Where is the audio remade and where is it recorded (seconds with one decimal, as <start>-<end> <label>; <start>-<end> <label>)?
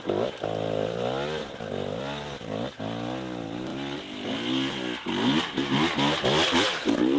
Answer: 0.0-7.2 recorded